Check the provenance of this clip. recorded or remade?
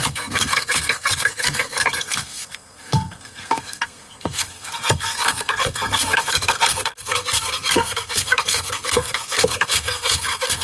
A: remade